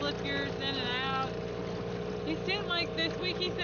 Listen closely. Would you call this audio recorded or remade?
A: recorded